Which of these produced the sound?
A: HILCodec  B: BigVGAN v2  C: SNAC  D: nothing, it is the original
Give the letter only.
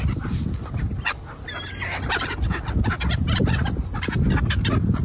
D